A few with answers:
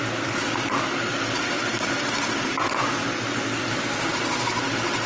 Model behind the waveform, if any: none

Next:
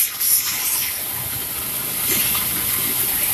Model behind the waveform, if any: none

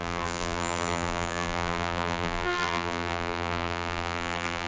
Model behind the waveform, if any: vocoder, BigVGAN v2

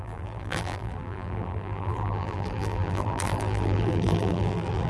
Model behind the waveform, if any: vocoder, BigVGAN v2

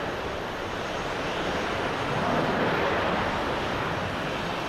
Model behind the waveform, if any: none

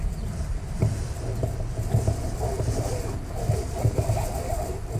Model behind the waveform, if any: none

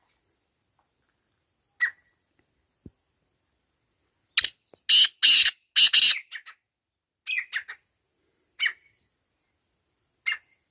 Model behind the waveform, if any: none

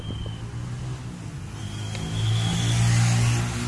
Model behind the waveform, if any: none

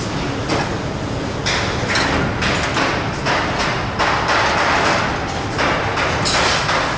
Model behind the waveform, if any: none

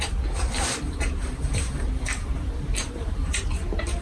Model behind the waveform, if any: vocoder, BigVGAN v2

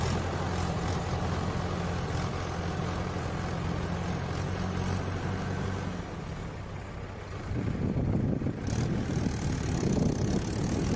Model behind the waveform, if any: none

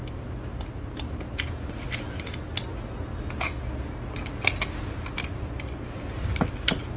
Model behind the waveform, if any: none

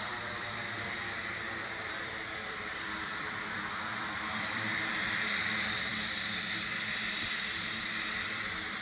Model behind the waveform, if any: vocoder, BigVGAN v2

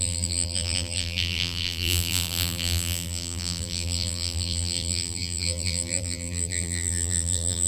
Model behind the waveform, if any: vocoder, BigVGAN v2